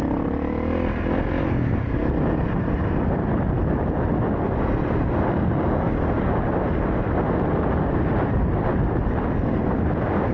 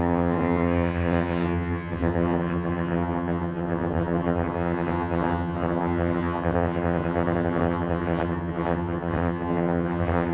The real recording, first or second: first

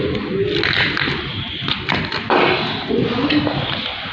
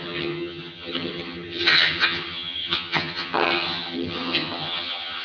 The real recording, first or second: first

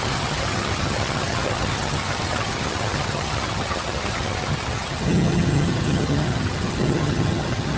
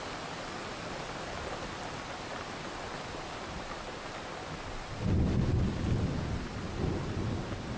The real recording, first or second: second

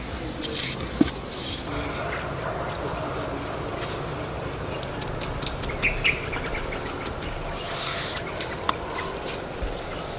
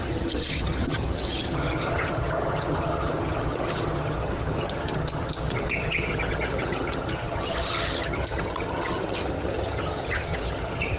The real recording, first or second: first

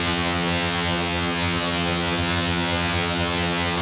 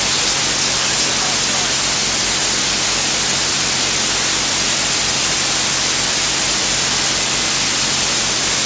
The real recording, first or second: second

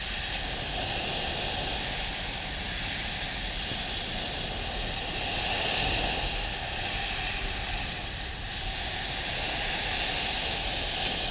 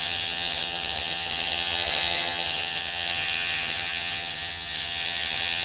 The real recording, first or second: first